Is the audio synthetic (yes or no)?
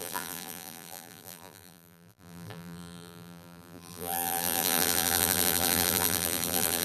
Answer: yes